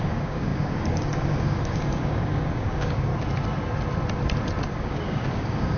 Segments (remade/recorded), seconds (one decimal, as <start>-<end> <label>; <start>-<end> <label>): 0.0-3.1 remade; 3.1-4.7 recorded; 4.7-5.8 remade